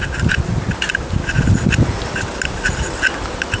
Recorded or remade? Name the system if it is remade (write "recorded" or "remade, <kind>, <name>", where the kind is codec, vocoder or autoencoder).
recorded